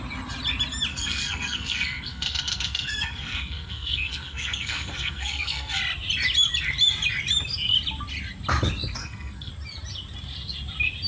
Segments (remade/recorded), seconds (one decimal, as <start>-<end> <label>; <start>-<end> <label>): 0.0-0.9 recorded; 0.9-5.8 remade; 5.8-9.0 recorded; 9.0-9.5 remade; 9.5-11.1 recorded